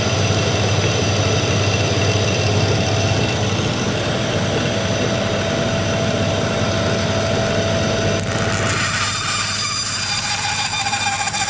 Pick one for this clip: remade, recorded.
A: recorded